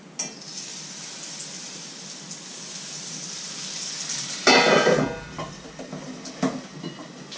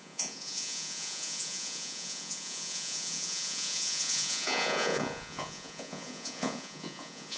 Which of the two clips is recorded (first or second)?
first